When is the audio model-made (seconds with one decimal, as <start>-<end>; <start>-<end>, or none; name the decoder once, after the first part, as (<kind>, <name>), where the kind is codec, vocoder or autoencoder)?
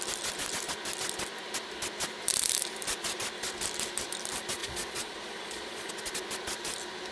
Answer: 4.6-5.9 (vocoder, Vocos)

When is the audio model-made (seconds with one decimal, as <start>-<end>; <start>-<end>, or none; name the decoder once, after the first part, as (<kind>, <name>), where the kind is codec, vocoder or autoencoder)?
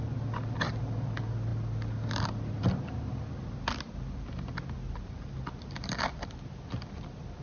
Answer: none